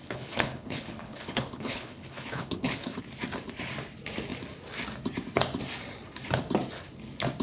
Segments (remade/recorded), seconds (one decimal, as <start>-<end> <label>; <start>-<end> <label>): 0.0-3.0 remade; 3.0-7.4 recorded